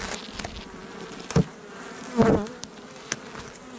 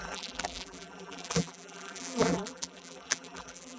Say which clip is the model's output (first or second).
second